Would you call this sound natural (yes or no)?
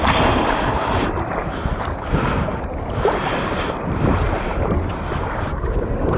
yes